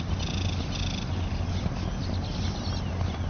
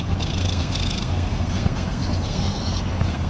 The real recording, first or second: first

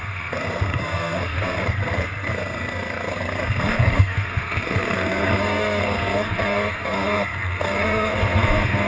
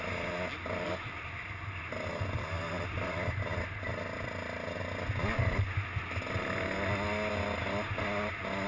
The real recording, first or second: second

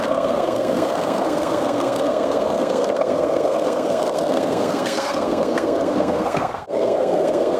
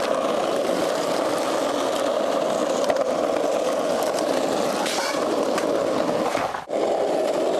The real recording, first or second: second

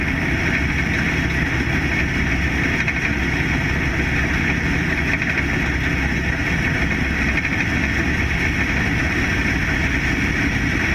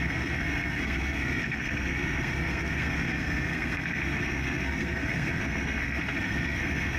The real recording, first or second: first